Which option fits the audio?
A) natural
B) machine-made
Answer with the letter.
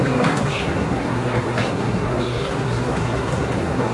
B